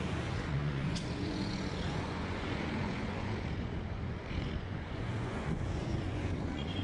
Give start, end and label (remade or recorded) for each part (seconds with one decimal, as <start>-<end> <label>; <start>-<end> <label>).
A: 0.0-6.8 remade